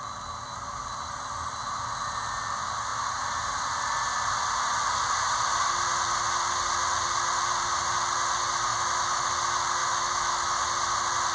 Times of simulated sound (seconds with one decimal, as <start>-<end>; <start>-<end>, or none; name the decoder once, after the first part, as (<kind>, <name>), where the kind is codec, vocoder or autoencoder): 8.7-9.3 (autoencoder, DAC-VAE); 9.8-10.6